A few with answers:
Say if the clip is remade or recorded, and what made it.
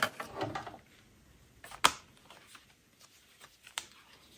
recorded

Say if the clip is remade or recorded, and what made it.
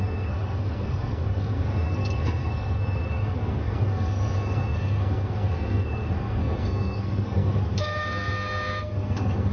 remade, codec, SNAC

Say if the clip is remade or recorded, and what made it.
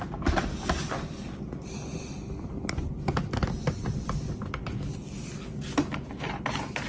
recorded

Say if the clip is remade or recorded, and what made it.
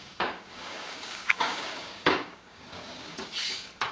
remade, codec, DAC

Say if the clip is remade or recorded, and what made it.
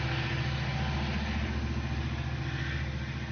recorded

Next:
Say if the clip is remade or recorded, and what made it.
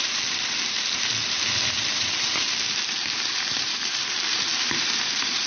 remade, vocoder, BigVGAN v2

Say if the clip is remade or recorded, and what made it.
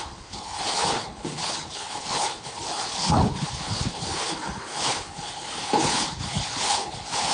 remade, codec, HILCodec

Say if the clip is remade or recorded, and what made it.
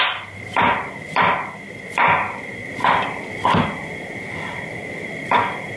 recorded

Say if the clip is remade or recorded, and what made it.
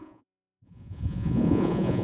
remade, vocoder, Vocos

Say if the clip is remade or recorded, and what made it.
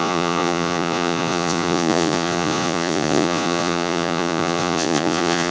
remade, vocoder, Vocos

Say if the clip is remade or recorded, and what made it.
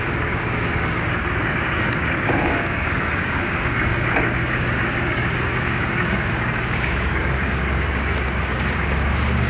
remade, codec, DAC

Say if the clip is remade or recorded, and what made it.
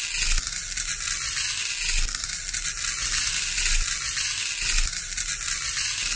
recorded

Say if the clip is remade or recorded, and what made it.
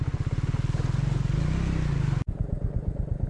recorded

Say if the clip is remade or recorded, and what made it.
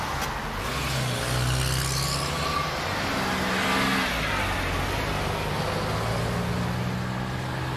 recorded